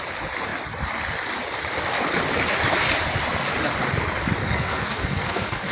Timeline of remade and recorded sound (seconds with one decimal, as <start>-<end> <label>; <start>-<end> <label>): 0.0-4.4 recorded; 4.4-5.7 remade